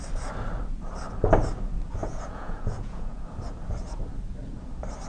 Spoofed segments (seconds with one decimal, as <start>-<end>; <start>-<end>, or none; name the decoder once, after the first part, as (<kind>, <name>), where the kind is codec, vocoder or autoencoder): 2.0-3.3 (vocoder, Vocos)